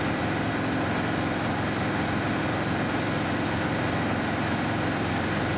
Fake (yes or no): no